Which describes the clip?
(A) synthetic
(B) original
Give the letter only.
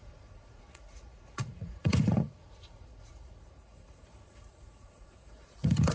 A